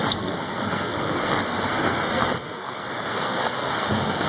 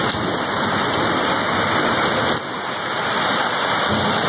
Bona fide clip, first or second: second